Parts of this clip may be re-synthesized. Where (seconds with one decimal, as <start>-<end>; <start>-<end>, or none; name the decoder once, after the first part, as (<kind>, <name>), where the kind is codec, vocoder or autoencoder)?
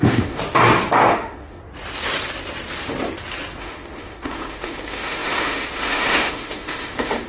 0.0-0.4 (autoencoder, DAC-VAE); 1.1-1.6; 3.6-7.3